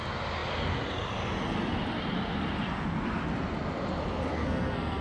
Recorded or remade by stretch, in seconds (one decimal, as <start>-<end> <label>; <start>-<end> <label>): 0.0-4.3 recorded; 4.3-5.0 remade